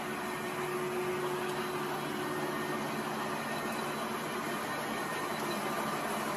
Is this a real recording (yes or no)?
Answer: yes